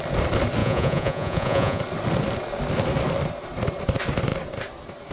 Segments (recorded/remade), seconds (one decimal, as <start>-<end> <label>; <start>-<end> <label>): 0.0-0.6 recorded; 0.6-1.8 remade; 1.8-5.1 recorded

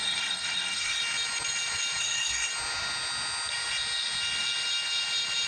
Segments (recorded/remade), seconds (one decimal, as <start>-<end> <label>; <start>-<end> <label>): 0.0-1.0 remade; 1.0-2.0 recorded; 2.0-2.5 remade; 2.5-5.5 recorded

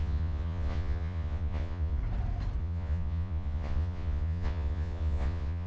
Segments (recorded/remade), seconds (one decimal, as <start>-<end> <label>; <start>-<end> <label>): 0.0-2.0 remade; 2.0-2.6 recorded; 2.6-5.7 remade

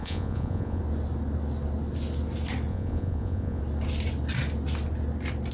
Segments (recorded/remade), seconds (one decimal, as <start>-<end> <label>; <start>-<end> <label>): 0.0-0.8 remade; 0.8-2.7 recorded; 2.7-3.6 remade; 3.6-5.5 recorded

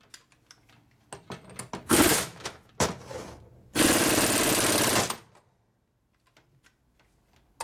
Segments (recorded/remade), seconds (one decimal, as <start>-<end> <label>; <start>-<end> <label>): 0.0-2.1 recorded; 2.1-2.7 remade; 2.7-7.6 recorded

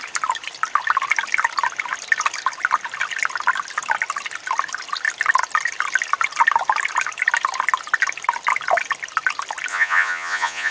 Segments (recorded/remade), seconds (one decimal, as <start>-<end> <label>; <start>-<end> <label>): 0.0-9.7 recorded; 9.7-10.7 remade

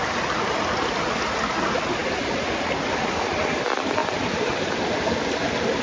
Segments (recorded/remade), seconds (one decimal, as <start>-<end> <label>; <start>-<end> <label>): 0.0-4.0 recorded; 4.0-4.8 remade; 4.8-5.8 recorded

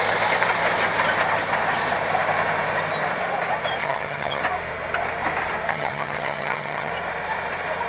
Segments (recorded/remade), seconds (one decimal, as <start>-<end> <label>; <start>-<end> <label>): 0.0-3.8 recorded; 3.8-4.4 remade; 4.4-5.7 recorded; 5.7-6.9 remade; 6.9-7.9 recorded